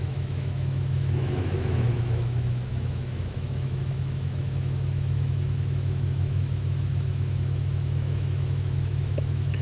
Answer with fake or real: fake